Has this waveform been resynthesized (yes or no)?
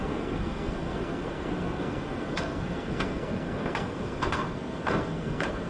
yes